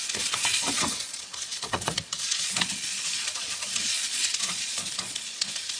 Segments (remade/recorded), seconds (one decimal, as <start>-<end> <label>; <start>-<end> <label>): 0.0-5.8 remade

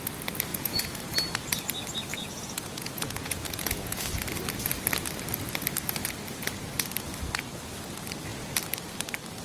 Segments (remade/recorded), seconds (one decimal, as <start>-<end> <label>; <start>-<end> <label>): 0.0-0.5 recorded; 0.5-1.0 remade; 1.0-2.1 recorded; 2.1-4.0 remade; 4.0-9.4 recorded

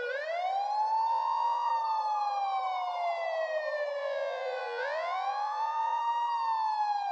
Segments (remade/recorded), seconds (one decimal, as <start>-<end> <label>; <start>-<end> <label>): 0.0-1.1 recorded; 1.1-1.7 remade; 1.7-4.0 recorded; 4.0-6.0 remade; 6.0-7.1 recorded

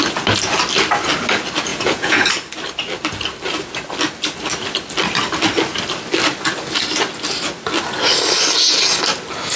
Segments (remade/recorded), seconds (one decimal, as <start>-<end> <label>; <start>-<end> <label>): 0.0-1.7 recorded; 1.7-2.3 remade; 2.3-9.6 recorded

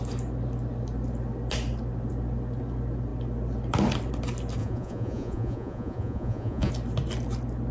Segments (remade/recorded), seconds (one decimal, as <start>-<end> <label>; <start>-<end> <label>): 0.0-4.6 recorded; 4.6-6.7 remade; 6.7-7.7 recorded

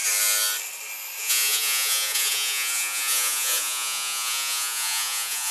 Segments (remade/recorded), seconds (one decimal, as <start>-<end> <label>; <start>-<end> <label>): 0.0-1.2 recorded; 1.2-5.5 remade

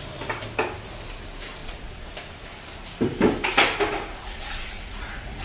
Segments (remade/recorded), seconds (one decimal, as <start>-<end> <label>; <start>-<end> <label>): 0.0-1.6 recorded; 1.6-2.1 remade; 2.1-3.9 recorded; 3.9-5.4 remade

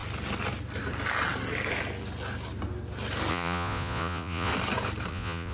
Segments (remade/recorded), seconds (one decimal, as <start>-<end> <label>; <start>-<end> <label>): 0.0-3.3 recorded; 3.3-4.5 remade; 4.5-5.1 recorded; 5.1-5.5 remade